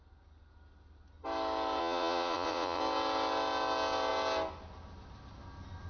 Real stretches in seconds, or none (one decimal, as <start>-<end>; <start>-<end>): 0.0-1.8; 2.8-5.9